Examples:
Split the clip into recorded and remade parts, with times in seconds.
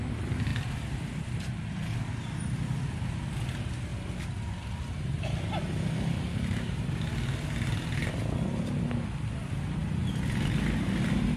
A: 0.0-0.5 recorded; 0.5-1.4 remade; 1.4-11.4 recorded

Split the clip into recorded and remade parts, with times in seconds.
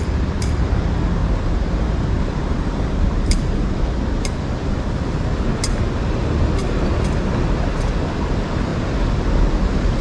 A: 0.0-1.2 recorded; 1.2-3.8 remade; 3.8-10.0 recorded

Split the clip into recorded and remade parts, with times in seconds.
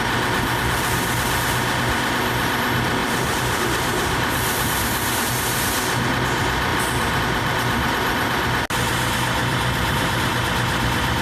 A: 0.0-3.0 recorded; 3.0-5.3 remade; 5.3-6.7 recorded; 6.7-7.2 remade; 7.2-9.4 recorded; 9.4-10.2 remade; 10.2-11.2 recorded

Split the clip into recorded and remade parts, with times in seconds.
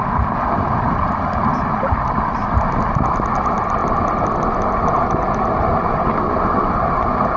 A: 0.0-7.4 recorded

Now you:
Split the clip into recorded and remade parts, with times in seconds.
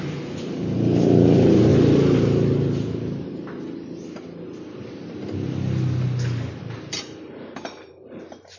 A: 0.0-1.7 remade; 1.7-6.6 recorded; 6.6-8.6 remade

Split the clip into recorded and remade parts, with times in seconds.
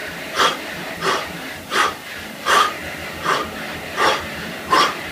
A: 0.0-0.6 recorded; 0.6-2.8 remade; 2.8-3.6 recorded; 3.6-5.1 remade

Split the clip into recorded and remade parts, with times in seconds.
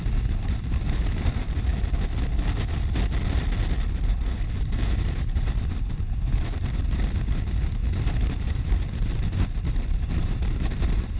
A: 0.0-1.7 remade; 1.7-4.1 recorded; 4.1-11.2 remade